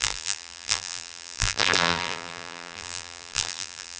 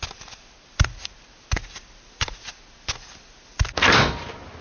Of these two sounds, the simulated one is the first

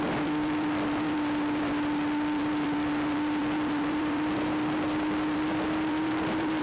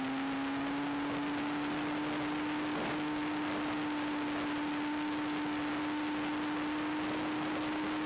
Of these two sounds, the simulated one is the first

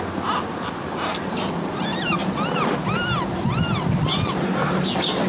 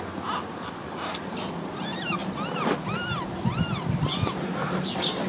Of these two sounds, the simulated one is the second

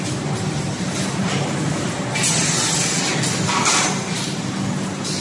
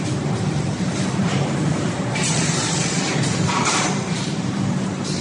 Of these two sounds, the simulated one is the second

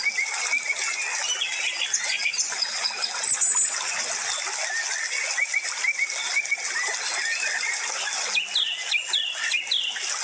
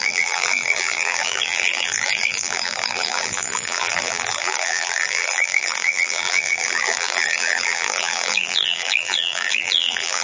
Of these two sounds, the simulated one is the second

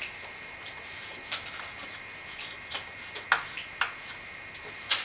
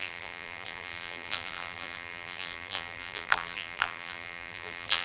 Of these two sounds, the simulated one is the second